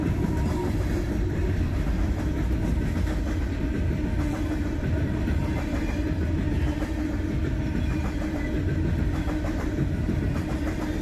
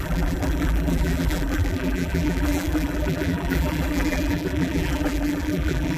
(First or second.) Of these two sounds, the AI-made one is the second